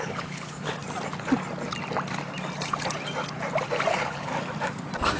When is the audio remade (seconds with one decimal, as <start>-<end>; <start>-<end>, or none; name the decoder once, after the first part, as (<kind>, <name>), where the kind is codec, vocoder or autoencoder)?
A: 0.0-0.8 (codec, HILCodec); 3.9-4.3